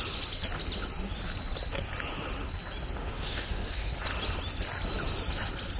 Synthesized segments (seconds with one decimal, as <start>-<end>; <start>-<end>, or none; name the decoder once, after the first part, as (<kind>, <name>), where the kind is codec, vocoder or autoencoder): 3.0-3.9 (autoencoder, DAC-VAE)